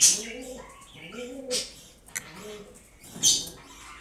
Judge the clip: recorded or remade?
recorded